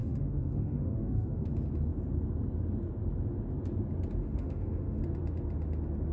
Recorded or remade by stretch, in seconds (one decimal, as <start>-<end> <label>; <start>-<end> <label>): 0.0-1.5 remade; 1.5-4.2 recorded; 4.2-5.0 remade; 5.0-6.1 recorded